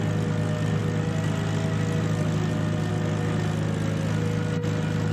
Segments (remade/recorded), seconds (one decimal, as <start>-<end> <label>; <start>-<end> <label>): 0.0-5.1 recorded